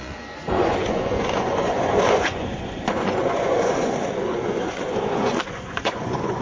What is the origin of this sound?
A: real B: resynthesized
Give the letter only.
B